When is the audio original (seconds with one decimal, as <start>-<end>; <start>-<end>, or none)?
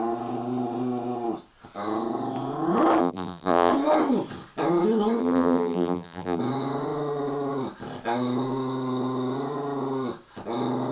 0.0-3.0; 3.7-5.2; 6.4-10.9